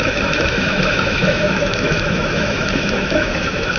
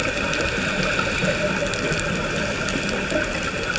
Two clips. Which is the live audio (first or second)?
second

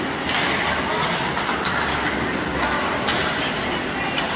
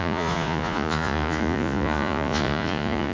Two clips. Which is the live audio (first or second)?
first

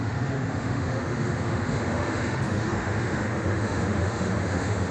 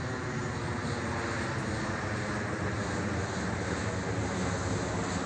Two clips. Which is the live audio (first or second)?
second